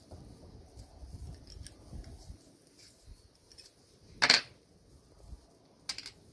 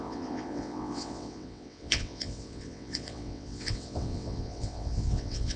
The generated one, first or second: second